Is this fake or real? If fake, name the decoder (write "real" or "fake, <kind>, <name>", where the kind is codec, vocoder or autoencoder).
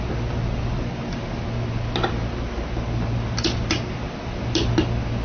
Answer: real